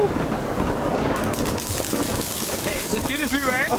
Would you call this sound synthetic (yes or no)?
yes